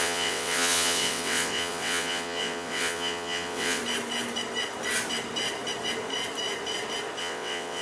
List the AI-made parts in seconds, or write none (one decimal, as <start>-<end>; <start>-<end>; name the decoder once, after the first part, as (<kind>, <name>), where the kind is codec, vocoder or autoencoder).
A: 0.0-3.8 (vocoder, WaveNeXt); 7.2-7.8